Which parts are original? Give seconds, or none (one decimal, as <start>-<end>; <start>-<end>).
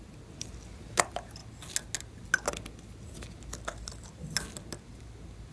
0.0-5.5